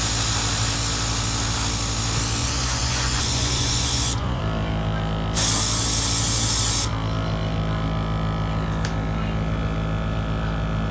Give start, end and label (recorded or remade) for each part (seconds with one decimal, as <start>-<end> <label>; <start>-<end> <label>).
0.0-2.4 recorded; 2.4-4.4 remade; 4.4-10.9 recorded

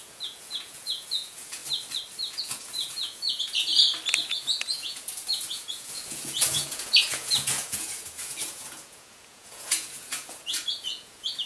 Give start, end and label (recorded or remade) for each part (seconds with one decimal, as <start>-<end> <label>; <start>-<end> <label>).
0.0-1.6 remade; 1.6-2.3 recorded; 2.3-3.7 remade; 3.7-4.2 recorded; 4.2-11.5 remade

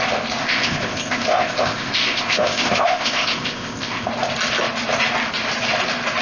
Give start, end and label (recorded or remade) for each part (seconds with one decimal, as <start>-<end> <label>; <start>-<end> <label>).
0.0-0.4 recorded; 0.4-4.1 remade; 4.1-6.2 recorded